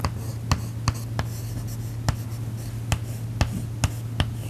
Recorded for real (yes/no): yes